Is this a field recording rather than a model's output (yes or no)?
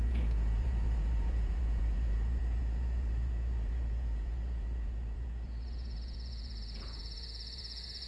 no